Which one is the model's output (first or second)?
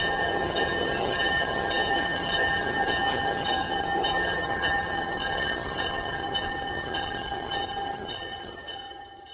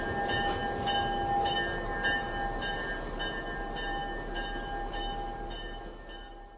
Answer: first